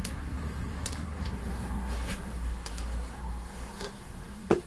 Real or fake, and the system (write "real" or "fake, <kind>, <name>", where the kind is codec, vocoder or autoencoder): fake, codec, SNAC